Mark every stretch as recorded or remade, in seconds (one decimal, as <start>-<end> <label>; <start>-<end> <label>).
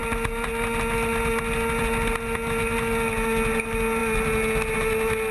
0.0-5.3 recorded